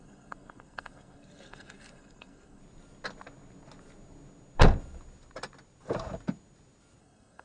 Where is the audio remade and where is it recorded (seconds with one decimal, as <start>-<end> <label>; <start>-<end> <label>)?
0.0-2.6 remade; 2.6-7.0 recorded; 7.0-7.4 remade